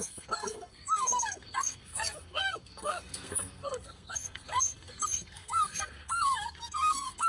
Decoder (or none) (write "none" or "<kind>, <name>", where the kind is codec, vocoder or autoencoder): codec, SNAC